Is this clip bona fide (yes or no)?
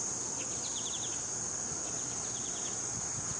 yes